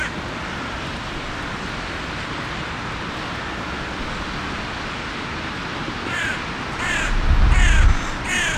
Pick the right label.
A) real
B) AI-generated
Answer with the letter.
A